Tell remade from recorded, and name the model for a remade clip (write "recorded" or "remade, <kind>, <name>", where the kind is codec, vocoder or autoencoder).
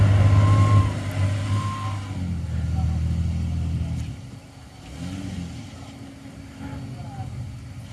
recorded